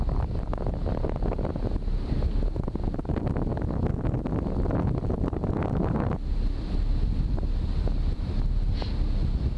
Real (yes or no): yes